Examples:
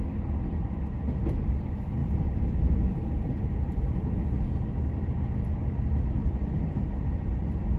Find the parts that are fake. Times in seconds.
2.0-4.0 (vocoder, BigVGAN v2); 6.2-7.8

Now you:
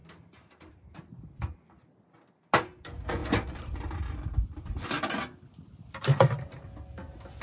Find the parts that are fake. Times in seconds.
0.0-1.9 (vocoder, BigVGAN v2); 3.2-5.2

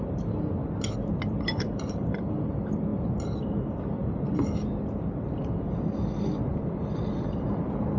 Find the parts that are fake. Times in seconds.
0.0-0.6 (vocoder, BigVGAN v2); 1.3-2.9

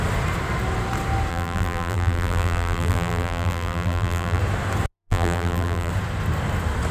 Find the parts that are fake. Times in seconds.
1.3-4.4 (vocoder, BigVGAN v2); 4.9-5.9

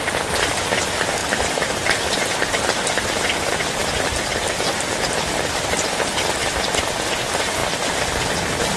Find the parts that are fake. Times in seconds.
1.2-2.3 (vocoder, BigVGAN v2)

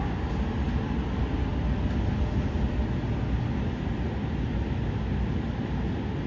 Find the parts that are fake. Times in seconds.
none

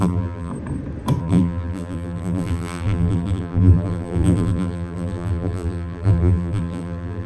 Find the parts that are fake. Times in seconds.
0.0-0.5 (vocoder, BigVGAN v2); 1.2-7.3